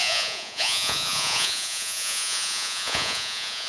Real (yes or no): no